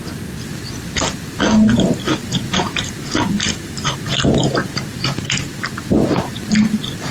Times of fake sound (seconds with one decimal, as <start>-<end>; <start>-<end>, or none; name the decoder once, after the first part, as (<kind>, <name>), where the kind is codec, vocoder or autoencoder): 2.2-5.5 (vocoder, BigVGAN v2)